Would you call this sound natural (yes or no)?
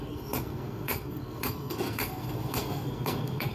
no